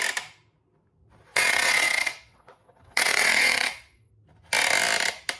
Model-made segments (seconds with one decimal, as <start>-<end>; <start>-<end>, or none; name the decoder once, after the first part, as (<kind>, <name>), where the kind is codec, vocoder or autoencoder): 1.3-4.1 (vocoder, WaveNeXt)